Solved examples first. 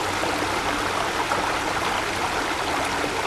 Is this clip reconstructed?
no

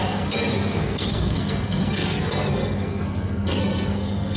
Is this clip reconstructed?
yes